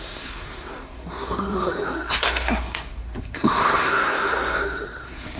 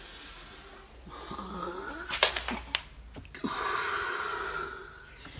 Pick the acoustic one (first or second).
second